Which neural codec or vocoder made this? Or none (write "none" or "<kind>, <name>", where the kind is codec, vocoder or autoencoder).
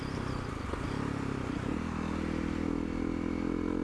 none